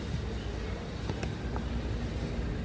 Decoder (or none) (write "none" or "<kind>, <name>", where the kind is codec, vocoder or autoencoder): none